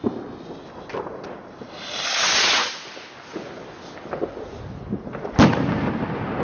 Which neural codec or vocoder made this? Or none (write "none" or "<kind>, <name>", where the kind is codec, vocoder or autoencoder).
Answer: none